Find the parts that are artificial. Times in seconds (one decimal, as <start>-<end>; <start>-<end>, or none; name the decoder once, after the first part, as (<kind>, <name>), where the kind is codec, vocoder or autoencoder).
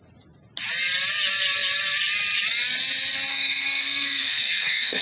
3.3-5.0 (codec, SNAC)